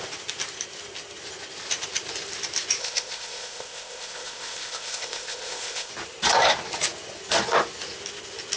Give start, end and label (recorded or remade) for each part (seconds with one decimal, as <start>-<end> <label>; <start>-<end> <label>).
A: 0.0-2.8 recorded; 2.8-5.9 remade; 5.9-8.6 recorded